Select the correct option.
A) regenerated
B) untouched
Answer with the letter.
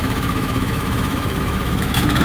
A